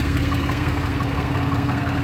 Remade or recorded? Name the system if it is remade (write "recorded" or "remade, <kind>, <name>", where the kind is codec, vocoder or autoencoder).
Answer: remade, codec, SNAC